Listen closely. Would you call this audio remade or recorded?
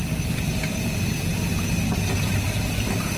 recorded